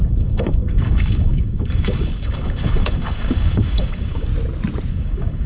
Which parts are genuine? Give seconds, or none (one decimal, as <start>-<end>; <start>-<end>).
4.3-4.9